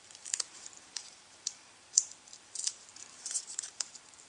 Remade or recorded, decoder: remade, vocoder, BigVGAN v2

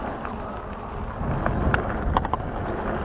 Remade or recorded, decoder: recorded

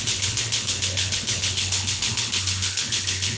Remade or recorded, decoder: remade, codec, HILCodec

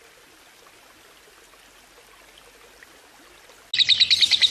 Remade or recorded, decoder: recorded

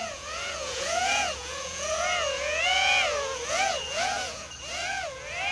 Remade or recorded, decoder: remade, vocoder, Vocos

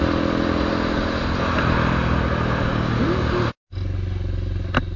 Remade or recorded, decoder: recorded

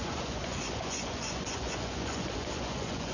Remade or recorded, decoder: remade, vocoder, Vocos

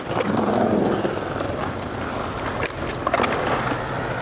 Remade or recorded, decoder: recorded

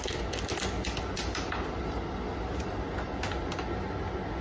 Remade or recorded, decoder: recorded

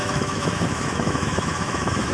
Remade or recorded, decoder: remade, autoencoder, DAC-VAE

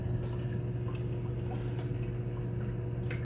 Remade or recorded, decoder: recorded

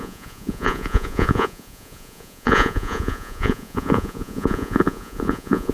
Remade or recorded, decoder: remade, vocoder, Vocos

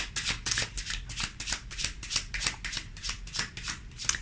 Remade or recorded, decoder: recorded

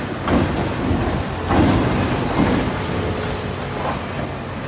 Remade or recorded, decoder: recorded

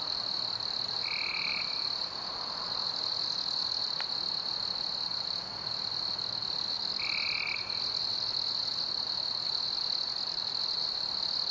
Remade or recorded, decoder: recorded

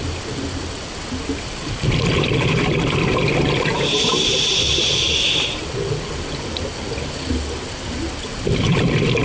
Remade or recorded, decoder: recorded